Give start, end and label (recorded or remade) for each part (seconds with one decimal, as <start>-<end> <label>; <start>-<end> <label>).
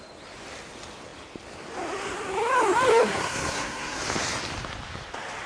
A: 0.0-2.9 recorded; 2.9-4.0 remade; 4.0-5.5 recorded